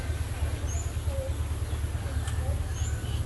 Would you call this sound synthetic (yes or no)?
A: no